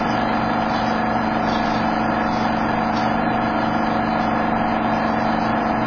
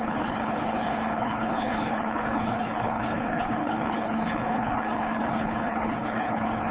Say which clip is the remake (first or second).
second